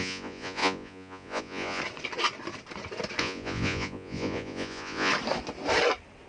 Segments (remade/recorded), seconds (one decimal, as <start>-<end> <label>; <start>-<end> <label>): 0.0-1.8 remade; 1.8-3.2 recorded; 3.2-5.1 remade; 5.1-6.3 recorded